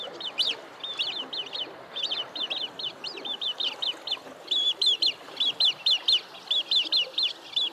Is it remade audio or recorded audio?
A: recorded